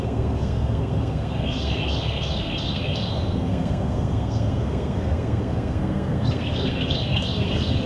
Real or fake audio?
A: fake